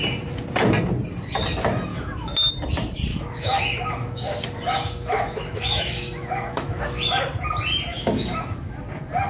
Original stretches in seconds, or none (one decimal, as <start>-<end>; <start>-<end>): 0.0-1.9; 2.5-3.1; 7.2-7.9; 8.8-9.3